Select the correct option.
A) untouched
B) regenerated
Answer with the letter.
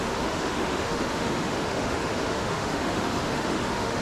B